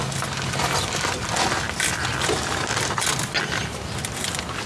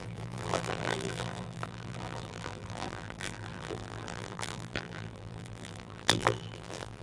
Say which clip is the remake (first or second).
second